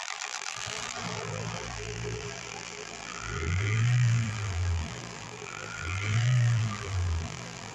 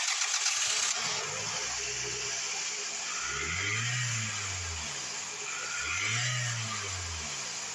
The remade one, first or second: first